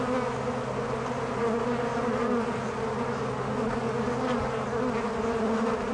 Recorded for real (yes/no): yes